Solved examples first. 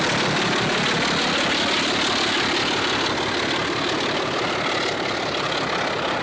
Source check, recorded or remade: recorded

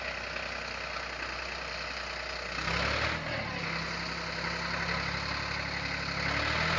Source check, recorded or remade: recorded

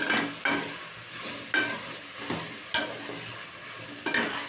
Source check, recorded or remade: recorded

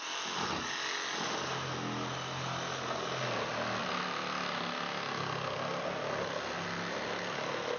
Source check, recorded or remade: recorded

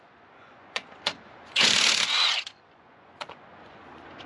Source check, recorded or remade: remade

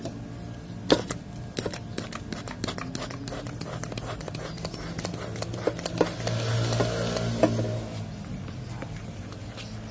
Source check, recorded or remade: recorded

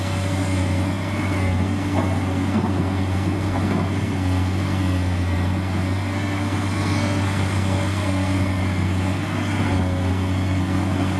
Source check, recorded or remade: remade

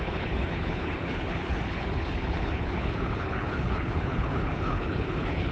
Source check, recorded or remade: remade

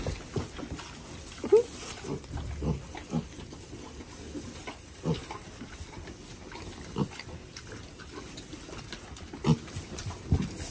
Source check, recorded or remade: recorded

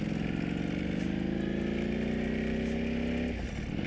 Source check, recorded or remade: recorded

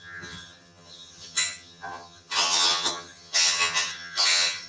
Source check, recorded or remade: remade